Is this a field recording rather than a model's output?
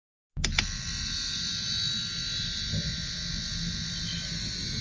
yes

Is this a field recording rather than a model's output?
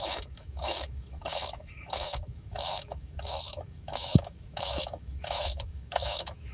no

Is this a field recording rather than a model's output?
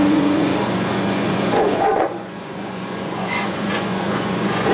no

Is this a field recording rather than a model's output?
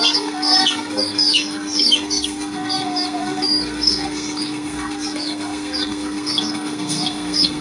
no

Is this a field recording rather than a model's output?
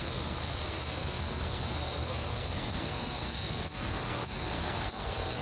no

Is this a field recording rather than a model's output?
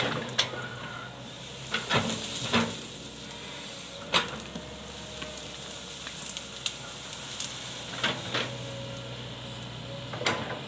yes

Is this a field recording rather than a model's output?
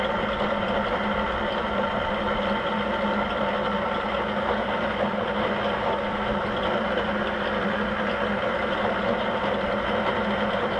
yes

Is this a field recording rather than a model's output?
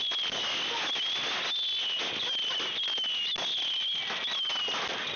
yes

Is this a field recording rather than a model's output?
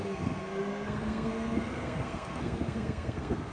no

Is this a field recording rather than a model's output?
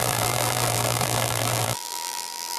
no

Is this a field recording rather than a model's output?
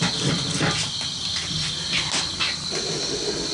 yes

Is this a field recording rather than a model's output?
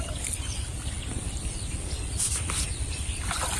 yes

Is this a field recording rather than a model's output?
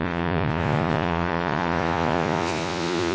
no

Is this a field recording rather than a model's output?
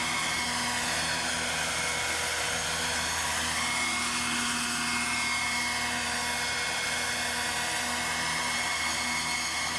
yes